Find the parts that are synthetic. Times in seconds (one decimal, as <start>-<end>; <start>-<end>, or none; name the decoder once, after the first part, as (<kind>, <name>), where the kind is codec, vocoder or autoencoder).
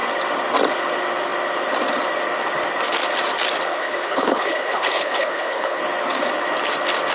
3.7-5.8 (codec, HILCodec)